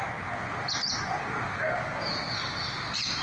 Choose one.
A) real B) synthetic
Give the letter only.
A